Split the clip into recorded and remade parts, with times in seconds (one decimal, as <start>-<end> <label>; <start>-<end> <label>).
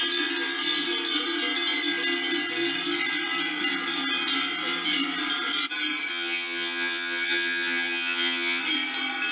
0.0-6.1 recorded; 6.1-8.6 remade; 8.6-9.3 recorded